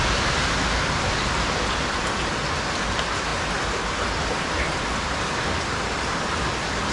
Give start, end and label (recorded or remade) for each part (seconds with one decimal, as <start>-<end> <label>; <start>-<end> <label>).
0.0-6.9 recorded